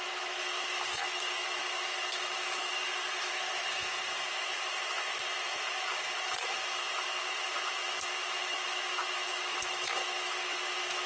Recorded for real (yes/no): no